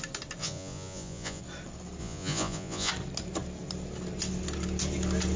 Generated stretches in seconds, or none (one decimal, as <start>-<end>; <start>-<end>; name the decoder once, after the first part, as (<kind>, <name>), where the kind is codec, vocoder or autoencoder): 0.4-1.4 (vocoder, Vocos); 2.0-2.9